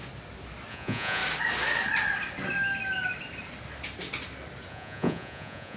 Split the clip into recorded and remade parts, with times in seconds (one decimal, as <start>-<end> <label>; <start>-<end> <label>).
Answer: 0.0-0.7 recorded; 0.7-1.2 remade; 1.2-4.7 recorded; 4.7-5.8 remade